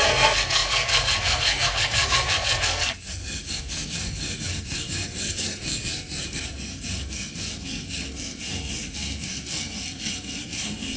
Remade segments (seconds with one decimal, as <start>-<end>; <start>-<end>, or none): 0.0-11.0